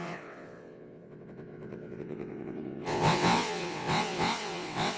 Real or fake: fake